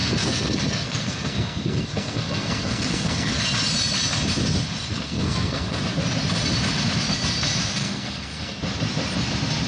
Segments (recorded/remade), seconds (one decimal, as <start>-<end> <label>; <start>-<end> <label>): 0.0-3.4 remade; 3.4-4.9 recorded; 4.9-5.8 remade; 5.8-7.8 recorded; 7.8-8.6 remade; 8.6-9.7 recorded